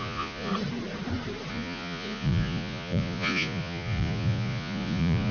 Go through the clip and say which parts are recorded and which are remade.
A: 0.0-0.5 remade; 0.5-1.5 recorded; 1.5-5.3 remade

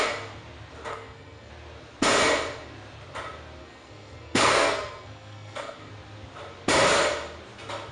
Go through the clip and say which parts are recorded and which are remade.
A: 0.0-0.9 recorded; 0.9-1.5 remade; 1.5-3.6 recorded; 3.6-5.9 remade; 5.9-7.9 recorded

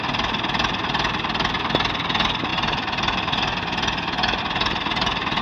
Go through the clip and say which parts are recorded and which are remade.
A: 0.0-5.4 recorded

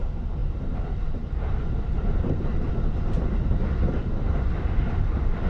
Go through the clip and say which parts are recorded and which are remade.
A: 0.0-0.4 recorded; 0.4-2.7 remade; 2.7-4.0 recorded; 4.0-4.5 remade; 4.5-5.5 recorded

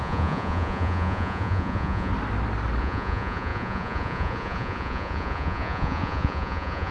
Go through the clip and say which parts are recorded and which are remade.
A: 0.0-2.1 remade; 2.1-2.8 recorded; 2.8-6.9 remade

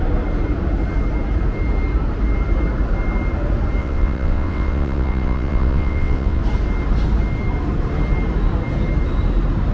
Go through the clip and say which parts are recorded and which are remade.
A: 0.0-3.8 recorded; 3.8-6.4 remade; 6.4-9.7 recorded